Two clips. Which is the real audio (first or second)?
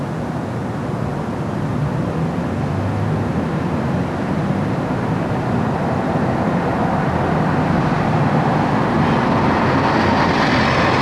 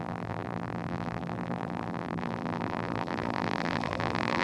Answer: first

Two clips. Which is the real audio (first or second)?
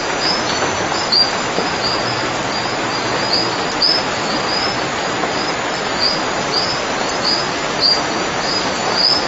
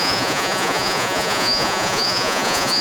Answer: first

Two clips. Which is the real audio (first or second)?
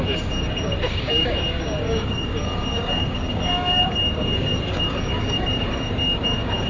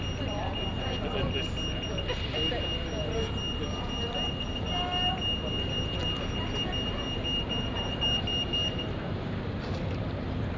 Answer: second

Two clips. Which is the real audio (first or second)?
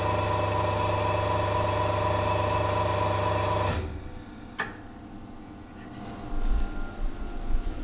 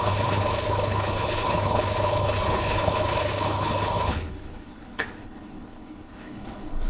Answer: first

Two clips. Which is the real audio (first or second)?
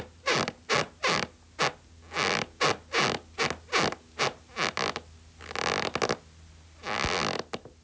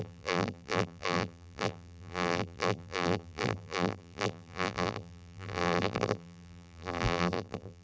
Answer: first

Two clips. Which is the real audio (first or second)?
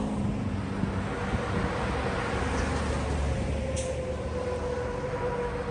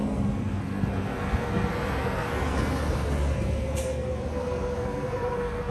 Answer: first